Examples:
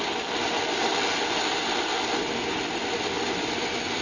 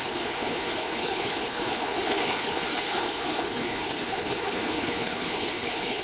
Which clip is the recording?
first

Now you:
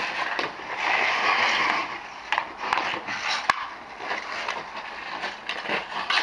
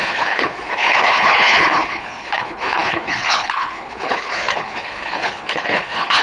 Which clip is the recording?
first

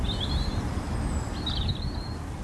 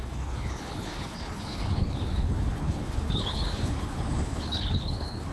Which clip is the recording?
first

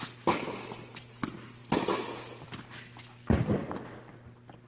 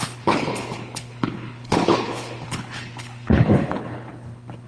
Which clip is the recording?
first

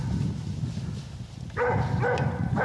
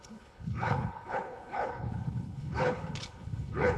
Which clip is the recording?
first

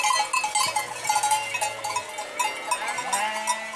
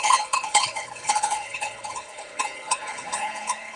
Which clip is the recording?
first